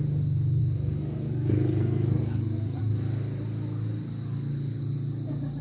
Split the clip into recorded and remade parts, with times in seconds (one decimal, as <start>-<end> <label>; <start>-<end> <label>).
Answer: 0.0-0.6 recorded; 0.6-2.8 remade; 2.8-5.6 recorded